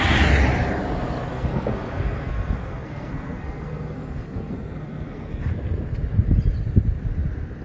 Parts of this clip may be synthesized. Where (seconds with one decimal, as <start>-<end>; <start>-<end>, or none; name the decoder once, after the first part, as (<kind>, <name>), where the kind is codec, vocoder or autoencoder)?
1.3-5.4 (codec, SNAC)